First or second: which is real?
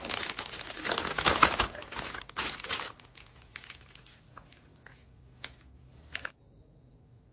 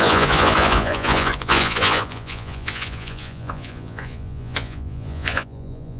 first